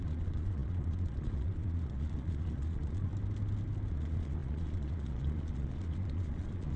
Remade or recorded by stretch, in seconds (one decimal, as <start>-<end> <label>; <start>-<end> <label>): 0.0-3.1 remade; 3.1-3.9 recorded; 3.9-6.8 remade